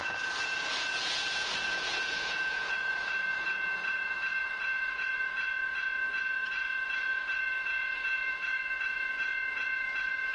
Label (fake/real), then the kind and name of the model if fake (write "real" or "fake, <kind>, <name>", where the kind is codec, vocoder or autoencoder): fake, vocoder, Vocos